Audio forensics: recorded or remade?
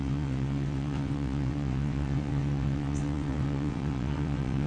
remade